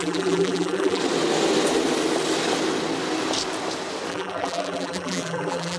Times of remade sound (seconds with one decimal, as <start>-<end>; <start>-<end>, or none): 0.0-1.0; 4.1-5.8